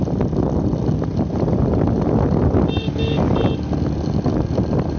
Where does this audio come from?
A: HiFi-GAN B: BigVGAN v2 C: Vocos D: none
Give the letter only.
D